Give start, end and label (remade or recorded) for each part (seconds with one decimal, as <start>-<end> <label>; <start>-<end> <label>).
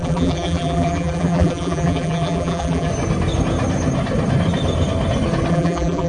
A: 0.0-2.9 remade; 2.9-5.5 recorded; 5.5-6.1 remade